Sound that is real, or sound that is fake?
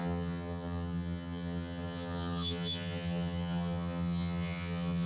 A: fake